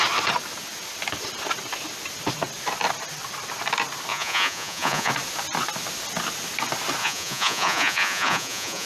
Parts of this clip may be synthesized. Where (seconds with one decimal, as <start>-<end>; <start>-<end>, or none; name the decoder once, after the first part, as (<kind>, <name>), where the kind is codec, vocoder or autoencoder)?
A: 4.1-5.1 (vocoder, Vocos); 7.0-8.9